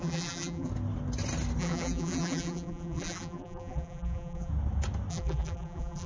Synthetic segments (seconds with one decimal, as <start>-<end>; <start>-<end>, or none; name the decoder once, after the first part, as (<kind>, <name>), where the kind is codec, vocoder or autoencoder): 0.0-0.7 (vocoder, BigVGAN v2); 1.6-4.5; 5.1-6.1

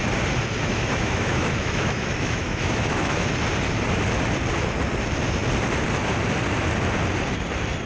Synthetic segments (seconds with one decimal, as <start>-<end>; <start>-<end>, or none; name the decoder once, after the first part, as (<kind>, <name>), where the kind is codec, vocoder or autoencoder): 0.6-3.3 (autoencoder, DAC-VAE)

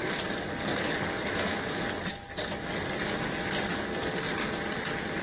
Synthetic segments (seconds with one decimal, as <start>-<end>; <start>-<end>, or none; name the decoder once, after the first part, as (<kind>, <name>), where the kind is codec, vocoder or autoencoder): none

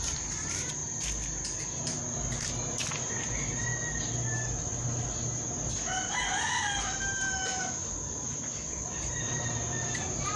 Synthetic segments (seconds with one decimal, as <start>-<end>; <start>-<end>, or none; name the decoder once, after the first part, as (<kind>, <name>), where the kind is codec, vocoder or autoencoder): 0.0-0.8 (vocoder, BigVGAN v2); 3.1-3.7; 6.8-10.4